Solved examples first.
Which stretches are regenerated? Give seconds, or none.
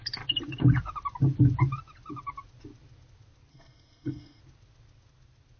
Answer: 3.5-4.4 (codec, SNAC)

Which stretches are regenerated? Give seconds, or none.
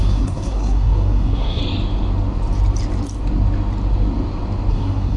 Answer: 0.0-1.6 (codec, SNAC); 4.7-5.2